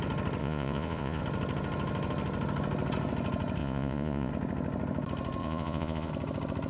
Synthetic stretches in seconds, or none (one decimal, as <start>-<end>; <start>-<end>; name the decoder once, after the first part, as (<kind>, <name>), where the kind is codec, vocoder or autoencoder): 0.4-1.2 (vocoder, Vocos); 3.6-4.3; 5.4-6.1